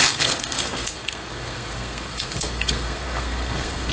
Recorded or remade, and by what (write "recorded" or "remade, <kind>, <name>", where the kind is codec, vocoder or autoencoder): remade, codec, SNAC